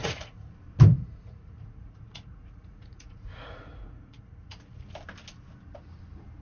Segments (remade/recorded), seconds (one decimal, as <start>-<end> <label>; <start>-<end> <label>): 0.0-0.5 remade; 0.5-1.0 recorded; 1.0-4.8 remade; 4.8-6.4 recorded